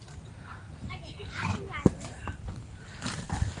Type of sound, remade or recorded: recorded